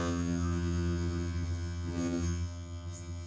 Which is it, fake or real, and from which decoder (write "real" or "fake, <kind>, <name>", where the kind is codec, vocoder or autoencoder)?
fake, vocoder, HiFi-GAN